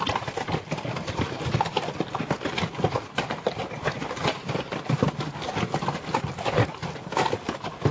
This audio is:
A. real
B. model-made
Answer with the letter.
A